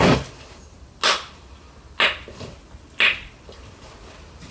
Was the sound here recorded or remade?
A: recorded